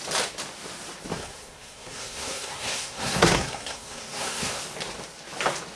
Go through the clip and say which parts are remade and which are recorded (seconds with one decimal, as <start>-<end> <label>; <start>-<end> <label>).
0.0-1.1 recorded; 1.1-4.6 remade; 4.6-5.8 recorded